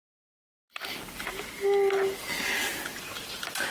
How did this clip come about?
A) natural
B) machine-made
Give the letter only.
A